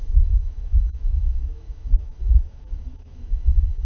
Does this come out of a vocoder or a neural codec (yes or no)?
yes